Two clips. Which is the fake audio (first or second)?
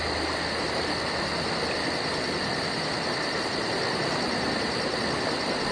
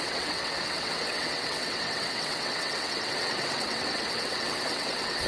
second